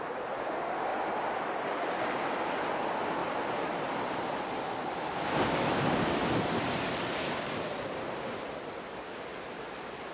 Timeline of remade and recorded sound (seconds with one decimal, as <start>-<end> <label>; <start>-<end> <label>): 0.0-3.2 recorded; 3.2-7.1 remade; 7.1-10.1 recorded